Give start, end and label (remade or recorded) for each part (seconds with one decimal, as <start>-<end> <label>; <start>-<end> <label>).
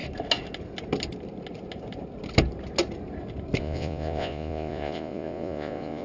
0.0-3.6 recorded; 3.6-6.0 remade